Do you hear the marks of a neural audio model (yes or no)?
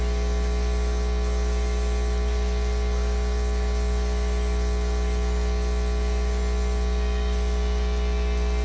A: no